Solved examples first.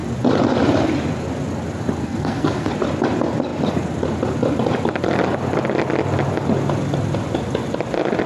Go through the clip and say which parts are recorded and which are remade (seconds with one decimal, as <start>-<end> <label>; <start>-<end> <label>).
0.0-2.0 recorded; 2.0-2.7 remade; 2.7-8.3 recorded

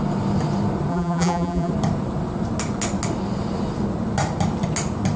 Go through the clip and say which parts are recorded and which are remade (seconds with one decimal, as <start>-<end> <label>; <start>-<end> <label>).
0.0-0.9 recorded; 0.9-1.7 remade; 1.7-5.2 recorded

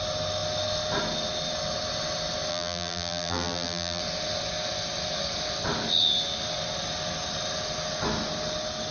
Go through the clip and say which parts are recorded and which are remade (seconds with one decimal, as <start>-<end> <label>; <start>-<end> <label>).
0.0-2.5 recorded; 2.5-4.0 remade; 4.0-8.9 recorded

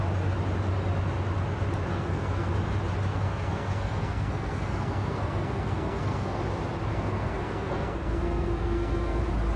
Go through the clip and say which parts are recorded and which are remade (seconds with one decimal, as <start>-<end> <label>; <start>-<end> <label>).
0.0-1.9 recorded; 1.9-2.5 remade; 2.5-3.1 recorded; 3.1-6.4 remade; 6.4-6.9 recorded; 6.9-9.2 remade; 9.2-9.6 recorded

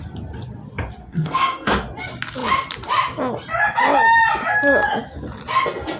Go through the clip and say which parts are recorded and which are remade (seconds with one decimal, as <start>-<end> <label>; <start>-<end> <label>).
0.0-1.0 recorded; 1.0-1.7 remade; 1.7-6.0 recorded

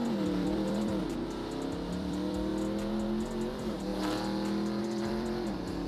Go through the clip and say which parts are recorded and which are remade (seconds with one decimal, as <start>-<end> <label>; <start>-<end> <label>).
0.0-0.9 remade; 0.9-1.9 recorded; 1.9-2.5 remade; 2.5-3.5 recorded; 3.5-3.9 remade; 3.9-4.8 recorded; 4.8-5.9 remade

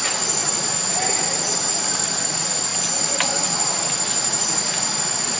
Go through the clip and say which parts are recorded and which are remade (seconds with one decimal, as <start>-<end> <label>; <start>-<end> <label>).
0.0-0.4 recorded; 0.4-1.7 remade; 1.7-5.4 recorded

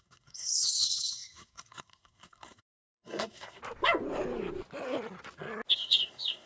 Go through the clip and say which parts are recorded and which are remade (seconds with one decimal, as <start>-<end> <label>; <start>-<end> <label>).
0.0-3.6 remade; 3.6-5.7 recorded; 5.7-6.5 remade